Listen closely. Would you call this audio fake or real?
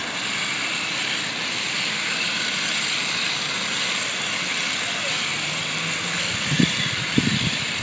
real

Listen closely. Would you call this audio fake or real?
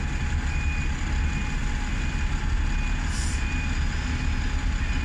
real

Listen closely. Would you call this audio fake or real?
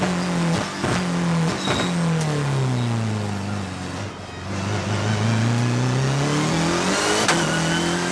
real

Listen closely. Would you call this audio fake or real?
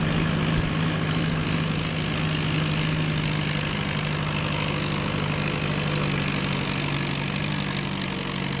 real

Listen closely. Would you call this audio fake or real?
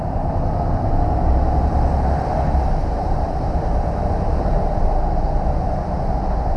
real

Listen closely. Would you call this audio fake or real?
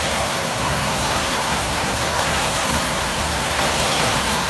fake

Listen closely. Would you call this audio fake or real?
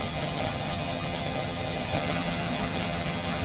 fake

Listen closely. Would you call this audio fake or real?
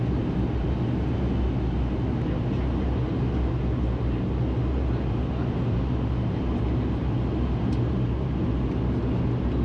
real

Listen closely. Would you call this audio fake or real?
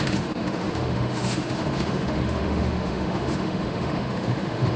fake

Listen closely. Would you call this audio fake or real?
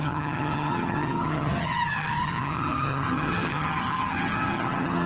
fake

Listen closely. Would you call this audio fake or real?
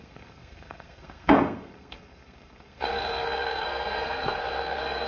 fake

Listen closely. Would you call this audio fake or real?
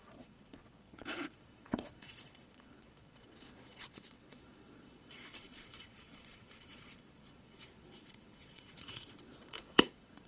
fake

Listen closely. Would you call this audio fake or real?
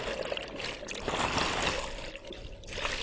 real